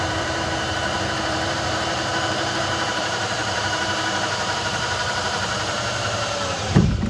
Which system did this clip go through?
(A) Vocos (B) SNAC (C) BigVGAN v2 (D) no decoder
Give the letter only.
C